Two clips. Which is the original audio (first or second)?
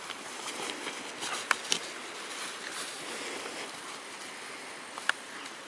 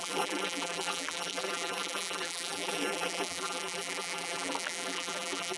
first